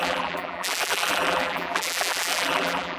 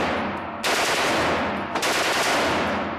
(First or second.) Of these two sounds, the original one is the second